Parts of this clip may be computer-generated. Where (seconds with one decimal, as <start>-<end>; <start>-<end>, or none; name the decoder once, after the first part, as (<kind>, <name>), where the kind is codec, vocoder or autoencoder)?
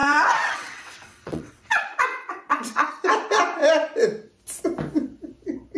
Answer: 0.0-2.9 (vocoder, WaveNeXt)